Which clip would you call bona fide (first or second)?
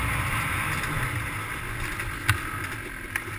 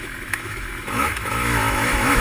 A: first